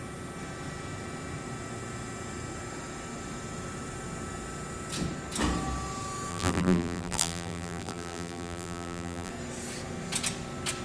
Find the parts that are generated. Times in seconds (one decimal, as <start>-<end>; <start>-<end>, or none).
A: 6.3-9.3